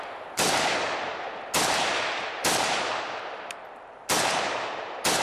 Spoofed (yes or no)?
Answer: no